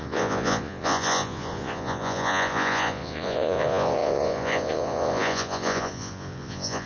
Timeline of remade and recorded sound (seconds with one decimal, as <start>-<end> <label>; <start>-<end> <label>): 0.0-6.9 remade